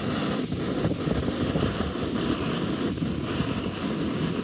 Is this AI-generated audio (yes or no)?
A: no